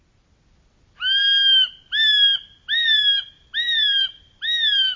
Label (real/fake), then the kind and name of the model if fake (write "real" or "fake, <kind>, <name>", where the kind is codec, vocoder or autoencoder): real